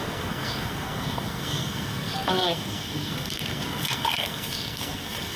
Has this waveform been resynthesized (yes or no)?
yes